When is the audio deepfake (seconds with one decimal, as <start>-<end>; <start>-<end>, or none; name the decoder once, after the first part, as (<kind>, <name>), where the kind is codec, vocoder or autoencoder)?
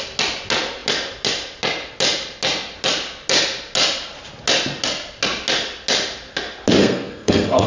6.8-7.7 (codec, SNAC)